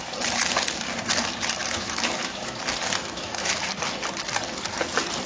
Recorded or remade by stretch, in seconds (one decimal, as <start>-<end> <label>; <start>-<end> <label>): 0.0-1.6 recorded; 1.6-2.6 remade; 2.6-3.0 recorded; 3.0-3.6 remade; 3.6-5.3 recorded